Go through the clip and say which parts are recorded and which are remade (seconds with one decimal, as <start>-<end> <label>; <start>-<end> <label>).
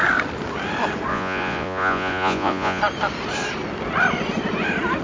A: 0.0-1.1 recorded; 1.1-2.8 remade; 2.8-5.0 recorded